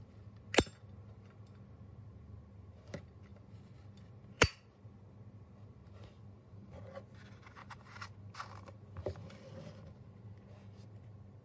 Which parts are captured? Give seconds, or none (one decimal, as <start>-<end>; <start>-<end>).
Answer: 0.0-11.4